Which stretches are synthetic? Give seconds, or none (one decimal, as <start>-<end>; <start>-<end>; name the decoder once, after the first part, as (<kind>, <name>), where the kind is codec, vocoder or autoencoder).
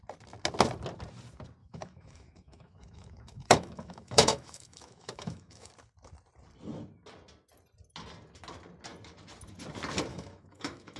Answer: 1.6-5.7 (autoencoder, DAC-VAE); 10.1-11.0